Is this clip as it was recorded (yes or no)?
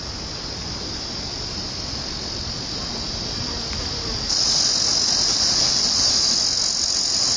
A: yes